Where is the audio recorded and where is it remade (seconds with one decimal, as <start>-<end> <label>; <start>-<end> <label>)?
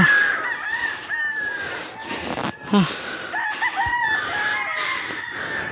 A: 0.0-5.7 recorded